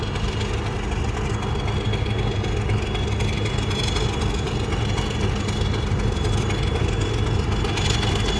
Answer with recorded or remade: recorded